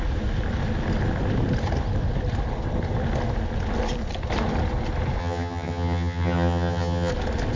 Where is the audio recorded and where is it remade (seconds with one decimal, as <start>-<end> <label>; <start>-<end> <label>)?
0.0-5.2 recorded; 5.2-7.1 remade; 7.1-7.6 recorded